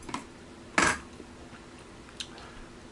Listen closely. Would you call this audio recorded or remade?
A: recorded